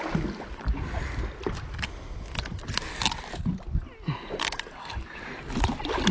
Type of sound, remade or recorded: recorded